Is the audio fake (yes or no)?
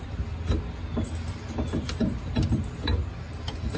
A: no